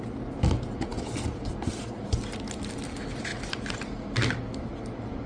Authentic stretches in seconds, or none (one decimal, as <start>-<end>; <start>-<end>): 0.0-5.3